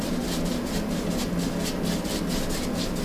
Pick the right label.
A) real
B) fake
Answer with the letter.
A